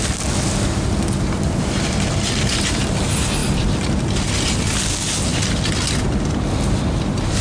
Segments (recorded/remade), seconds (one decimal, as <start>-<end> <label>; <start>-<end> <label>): 0.0-7.4 recorded